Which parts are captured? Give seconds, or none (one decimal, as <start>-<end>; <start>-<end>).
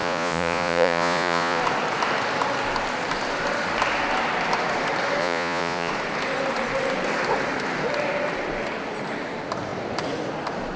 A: 1.6-5.2; 5.9-10.8